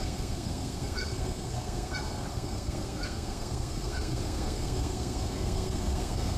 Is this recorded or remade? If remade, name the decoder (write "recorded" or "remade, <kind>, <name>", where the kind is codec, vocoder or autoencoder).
remade, codec, SNAC